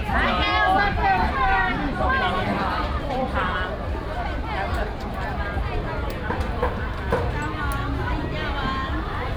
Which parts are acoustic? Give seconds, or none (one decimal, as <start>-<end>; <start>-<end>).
0.0-2.5; 3.7-9.4